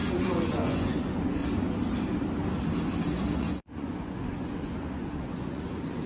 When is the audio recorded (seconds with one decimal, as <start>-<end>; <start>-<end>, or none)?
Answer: 1.4-3.3